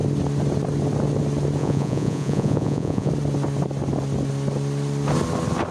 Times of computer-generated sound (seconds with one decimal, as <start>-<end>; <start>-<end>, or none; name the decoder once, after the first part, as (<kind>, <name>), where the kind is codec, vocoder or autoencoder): 1.6-3.1 (vocoder, Vocos)